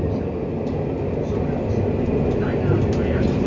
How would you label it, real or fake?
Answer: real